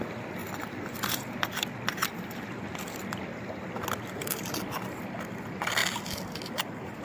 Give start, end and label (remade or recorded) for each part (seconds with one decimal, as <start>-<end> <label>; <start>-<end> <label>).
0.0-7.0 recorded